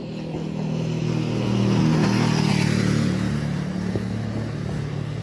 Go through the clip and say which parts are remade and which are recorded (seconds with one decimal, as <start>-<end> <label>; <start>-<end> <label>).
0.0-5.2 recorded